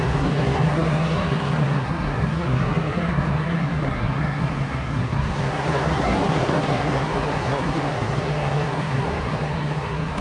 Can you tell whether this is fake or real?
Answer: fake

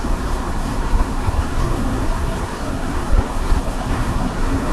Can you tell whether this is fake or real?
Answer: fake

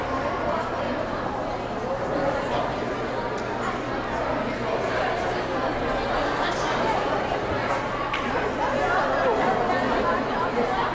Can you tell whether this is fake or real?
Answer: real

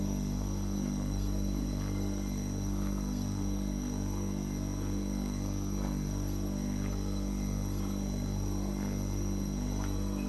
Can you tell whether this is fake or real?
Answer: fake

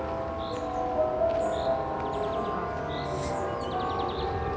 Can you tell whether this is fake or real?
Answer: real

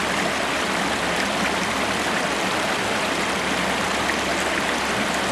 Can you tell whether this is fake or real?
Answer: real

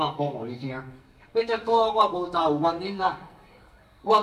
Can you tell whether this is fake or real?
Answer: fake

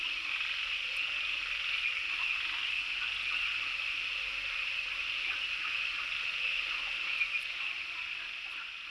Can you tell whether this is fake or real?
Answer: real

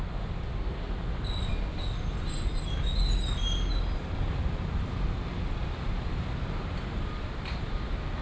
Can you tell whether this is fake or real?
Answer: real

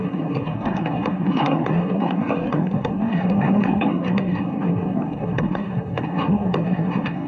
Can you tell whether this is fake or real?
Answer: fake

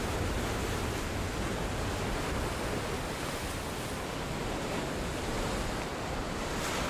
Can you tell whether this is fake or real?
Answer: real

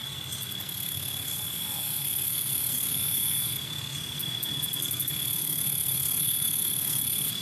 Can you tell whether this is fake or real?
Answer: fake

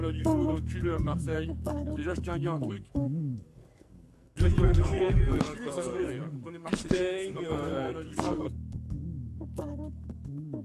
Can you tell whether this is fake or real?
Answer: fake